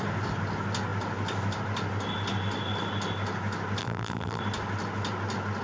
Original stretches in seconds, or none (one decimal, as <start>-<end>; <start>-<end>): 0.0-3.8; 4.4-5.6